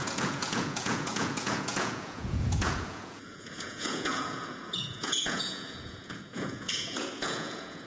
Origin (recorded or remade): remade